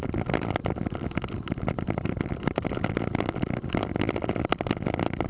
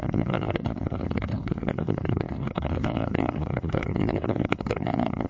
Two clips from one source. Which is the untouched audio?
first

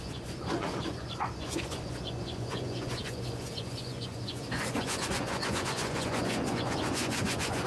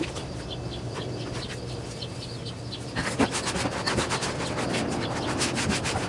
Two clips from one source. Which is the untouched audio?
second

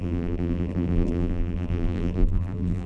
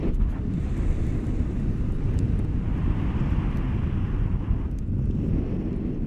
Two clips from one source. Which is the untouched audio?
second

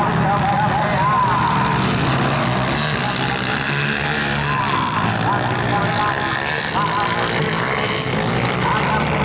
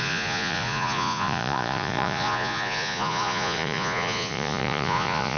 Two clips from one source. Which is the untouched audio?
first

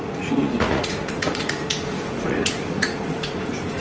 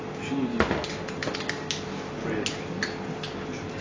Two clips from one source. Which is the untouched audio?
second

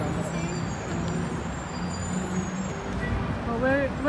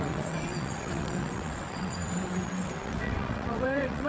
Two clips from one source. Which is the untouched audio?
first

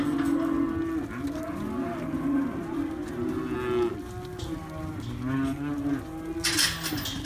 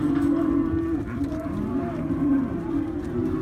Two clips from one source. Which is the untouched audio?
first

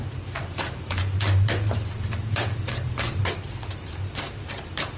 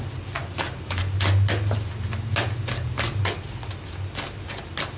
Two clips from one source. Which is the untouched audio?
second